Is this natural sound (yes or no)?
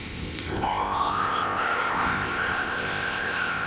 no